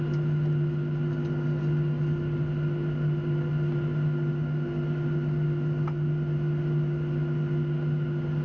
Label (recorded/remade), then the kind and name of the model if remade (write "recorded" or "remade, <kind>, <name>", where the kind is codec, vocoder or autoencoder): recorded